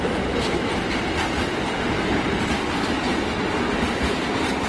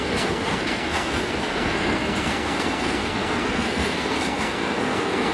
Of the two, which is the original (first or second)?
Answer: first